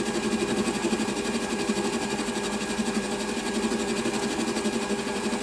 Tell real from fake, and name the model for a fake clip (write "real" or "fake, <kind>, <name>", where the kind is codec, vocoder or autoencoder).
real